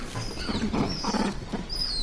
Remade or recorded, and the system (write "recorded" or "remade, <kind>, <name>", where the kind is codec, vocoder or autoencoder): recorded